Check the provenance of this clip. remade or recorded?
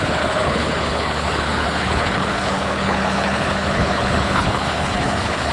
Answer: remade